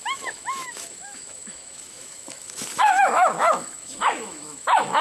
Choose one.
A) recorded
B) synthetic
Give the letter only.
B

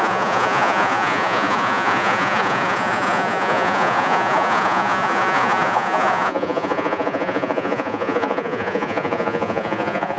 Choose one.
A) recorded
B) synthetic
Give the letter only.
B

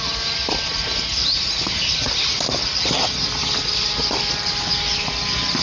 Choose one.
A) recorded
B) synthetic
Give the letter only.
A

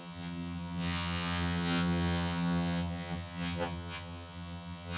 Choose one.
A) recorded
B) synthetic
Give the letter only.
B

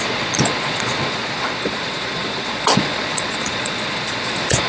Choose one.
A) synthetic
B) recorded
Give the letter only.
A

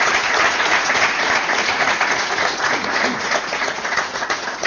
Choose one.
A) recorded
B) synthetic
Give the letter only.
B